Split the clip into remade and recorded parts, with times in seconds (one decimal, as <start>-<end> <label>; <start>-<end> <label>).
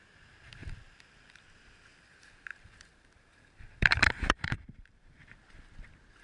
0.0-0.6 recorded; 0.6-1.4 remade; 1.4-2.5 recorded; 2.5-5.4 remade; 5.4-6.2 recorded